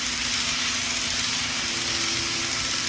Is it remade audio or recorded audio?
recorded